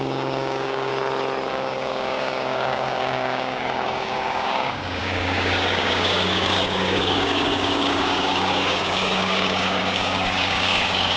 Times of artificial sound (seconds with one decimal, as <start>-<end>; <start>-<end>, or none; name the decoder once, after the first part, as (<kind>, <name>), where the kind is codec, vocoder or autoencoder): 0.0-0.9 (codec, DAC); 1.5-11.2